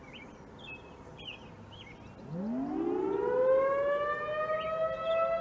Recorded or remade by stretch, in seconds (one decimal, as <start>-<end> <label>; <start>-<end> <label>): 0.0-5.4 recorded